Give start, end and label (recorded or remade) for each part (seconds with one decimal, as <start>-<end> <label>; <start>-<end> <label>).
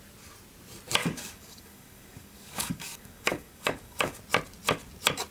0.0-1.0 recorded; 1.0-4.2 remade; 4.2-5.3 recorded